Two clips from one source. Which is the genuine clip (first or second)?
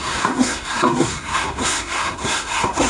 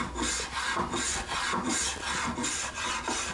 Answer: second